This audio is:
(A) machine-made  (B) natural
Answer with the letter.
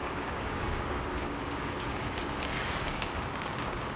A